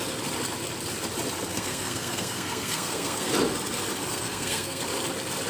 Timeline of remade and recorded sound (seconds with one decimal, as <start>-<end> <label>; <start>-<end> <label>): 0.0-1.5 recorded; 1.5-3.3 remade; 3.3-4.1 recorded; 4.1-4.8 remade; 4.8-5.5 recorded